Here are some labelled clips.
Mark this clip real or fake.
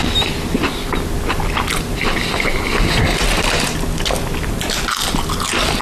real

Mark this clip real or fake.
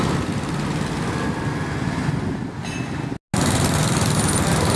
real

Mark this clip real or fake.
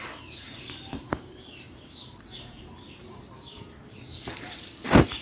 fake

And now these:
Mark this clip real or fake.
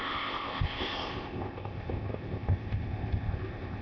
fake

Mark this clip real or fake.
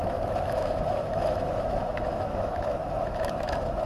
fake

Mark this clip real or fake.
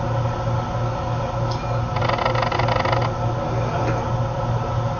real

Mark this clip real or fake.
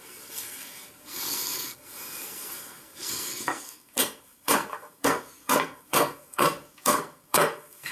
fake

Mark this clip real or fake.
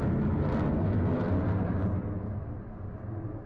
real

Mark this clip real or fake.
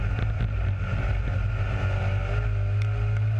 real